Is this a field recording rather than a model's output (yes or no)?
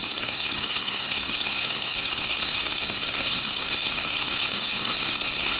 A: no